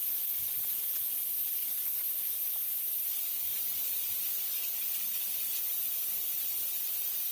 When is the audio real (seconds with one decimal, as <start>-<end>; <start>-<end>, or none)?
0.0-3.5; 4.3-5.4; 6.7-7.3